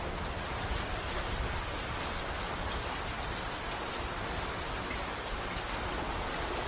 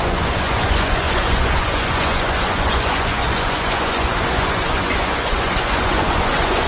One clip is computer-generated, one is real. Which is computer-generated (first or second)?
second